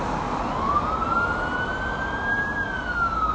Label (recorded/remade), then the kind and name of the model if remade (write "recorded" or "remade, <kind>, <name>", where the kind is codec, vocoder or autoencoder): recorded